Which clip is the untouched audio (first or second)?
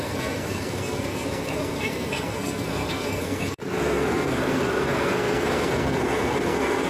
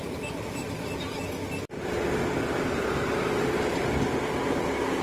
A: second